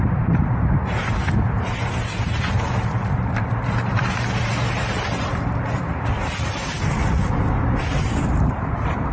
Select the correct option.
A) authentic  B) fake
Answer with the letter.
B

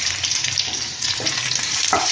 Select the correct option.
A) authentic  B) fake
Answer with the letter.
B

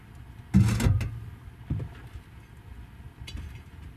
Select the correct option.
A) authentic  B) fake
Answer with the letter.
A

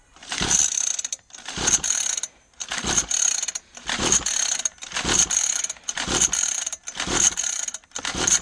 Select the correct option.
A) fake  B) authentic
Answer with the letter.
A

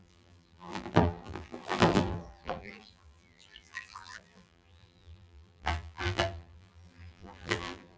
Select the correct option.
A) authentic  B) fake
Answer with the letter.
B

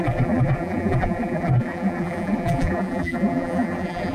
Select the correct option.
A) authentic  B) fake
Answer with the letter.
B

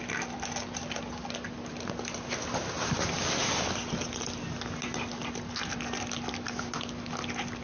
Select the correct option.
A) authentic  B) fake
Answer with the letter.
A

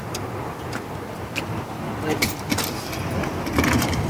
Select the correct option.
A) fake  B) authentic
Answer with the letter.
B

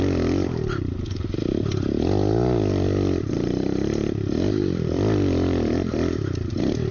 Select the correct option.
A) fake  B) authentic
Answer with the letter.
A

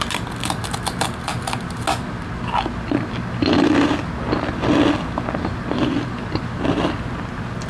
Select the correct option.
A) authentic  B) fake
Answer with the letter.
A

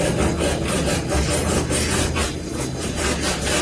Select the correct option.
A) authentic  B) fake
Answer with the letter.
A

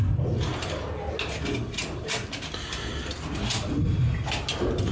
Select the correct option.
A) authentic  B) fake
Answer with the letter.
A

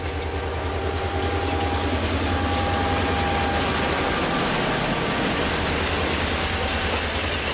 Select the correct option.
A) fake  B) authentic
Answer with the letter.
B